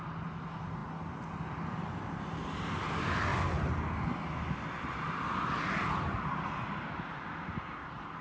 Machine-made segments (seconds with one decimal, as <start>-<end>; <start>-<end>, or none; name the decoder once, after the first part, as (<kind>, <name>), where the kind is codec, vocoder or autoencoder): none